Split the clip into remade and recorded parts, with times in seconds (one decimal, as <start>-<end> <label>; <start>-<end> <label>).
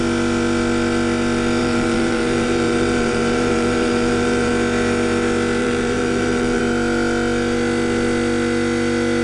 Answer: 0.0-1.6 recorded; 1.6-4.5 remade; 4.5-5.6 recorded; 5.6-6.6 remade; 6.6-9.2 recorded